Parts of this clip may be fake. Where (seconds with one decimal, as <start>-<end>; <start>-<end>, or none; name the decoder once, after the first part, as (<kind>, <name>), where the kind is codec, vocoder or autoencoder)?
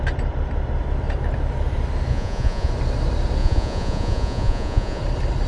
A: 2.1-2.7 (vocoder, Vocos); 3.4-5.0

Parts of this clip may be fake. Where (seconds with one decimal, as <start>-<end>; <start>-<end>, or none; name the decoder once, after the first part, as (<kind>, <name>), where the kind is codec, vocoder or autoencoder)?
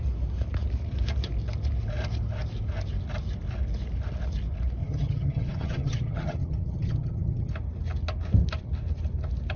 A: 4.8-7.5 (vocoder, HiFi-GAN)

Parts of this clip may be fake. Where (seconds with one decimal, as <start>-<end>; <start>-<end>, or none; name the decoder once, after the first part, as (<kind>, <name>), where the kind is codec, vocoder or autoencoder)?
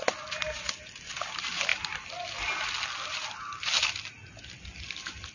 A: none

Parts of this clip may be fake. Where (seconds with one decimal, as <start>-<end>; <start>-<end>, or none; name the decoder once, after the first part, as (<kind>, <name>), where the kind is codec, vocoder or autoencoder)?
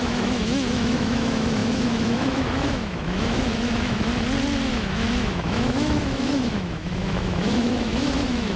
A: 0.0-4.1 (autoencoder, DAC-VAE); 4.7-8.6